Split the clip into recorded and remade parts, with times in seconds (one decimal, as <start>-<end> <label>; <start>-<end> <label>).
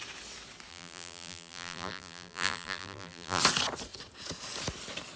0.0-0.7 recorded; 0.7-3.4 remade; 3.4-5.2 recorded